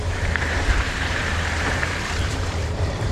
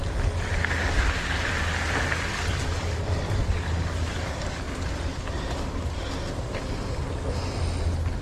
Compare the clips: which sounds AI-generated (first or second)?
first